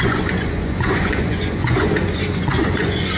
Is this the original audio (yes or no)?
no